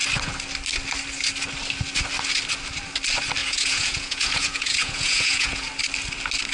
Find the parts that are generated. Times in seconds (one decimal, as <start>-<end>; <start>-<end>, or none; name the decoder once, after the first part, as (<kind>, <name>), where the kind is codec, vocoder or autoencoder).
3.4-5.7 (vocoder, Vocos)